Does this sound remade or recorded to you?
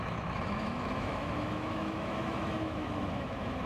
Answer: remade